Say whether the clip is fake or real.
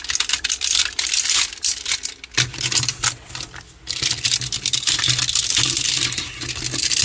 real